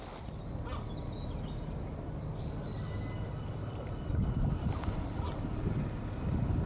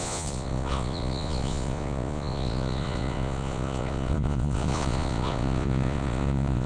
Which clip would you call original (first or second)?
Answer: first